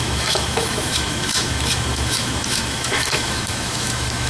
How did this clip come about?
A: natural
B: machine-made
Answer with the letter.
B